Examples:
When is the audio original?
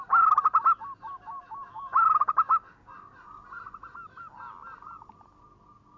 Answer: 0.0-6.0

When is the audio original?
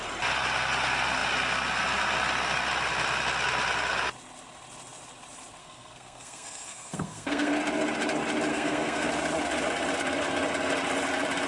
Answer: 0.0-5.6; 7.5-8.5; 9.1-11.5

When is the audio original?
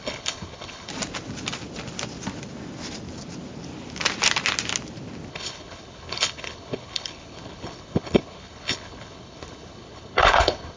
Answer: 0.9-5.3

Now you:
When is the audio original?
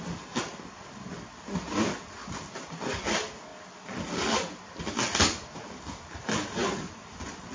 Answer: 0.0-7.5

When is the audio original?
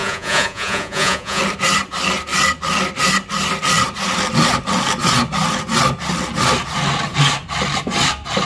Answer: 1.4-8.5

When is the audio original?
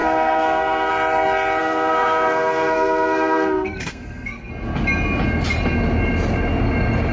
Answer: 0.9-1.6; 4.5-7.1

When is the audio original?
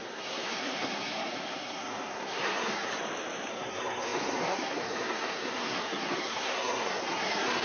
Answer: 2.9-3.5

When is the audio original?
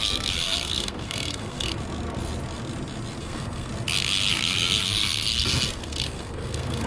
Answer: 1.7-3.2; 3.7-4.3